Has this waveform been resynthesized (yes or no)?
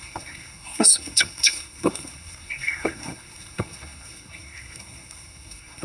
yes